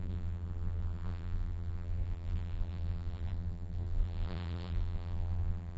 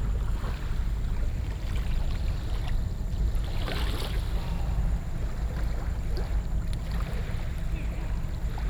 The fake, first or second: first